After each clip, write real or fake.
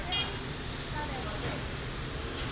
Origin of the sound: real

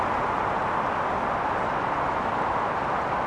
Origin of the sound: real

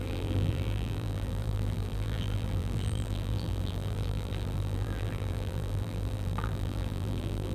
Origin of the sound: fake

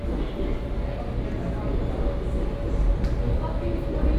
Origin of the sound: real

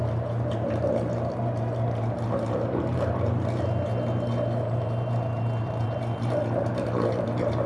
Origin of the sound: fake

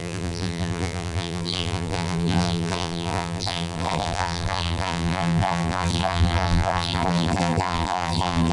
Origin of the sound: fake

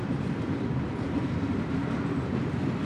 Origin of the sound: real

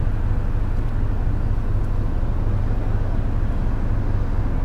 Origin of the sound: real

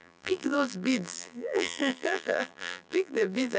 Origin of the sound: fake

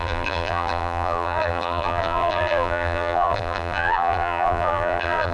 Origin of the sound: fake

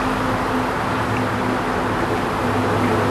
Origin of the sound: real